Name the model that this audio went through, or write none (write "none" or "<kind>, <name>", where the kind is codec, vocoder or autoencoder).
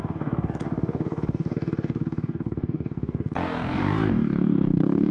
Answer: codec, DAC